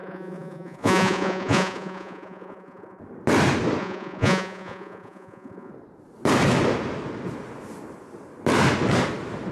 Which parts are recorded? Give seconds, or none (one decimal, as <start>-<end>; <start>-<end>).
3.0-3.8; 5.7-9.5